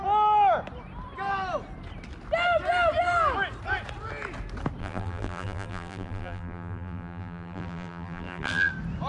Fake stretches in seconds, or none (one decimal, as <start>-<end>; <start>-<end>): 4.8-8.7